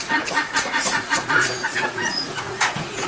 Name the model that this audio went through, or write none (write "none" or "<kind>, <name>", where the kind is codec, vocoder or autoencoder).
vocoder, Vocos